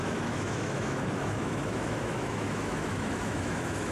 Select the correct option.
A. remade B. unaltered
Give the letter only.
A